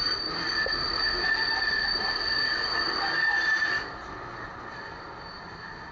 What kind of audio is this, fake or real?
real